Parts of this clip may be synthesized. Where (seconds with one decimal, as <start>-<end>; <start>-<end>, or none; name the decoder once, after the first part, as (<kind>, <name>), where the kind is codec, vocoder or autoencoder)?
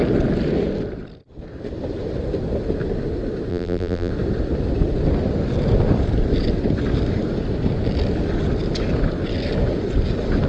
3.5-4.1 (vocoder, BigVGAN v2)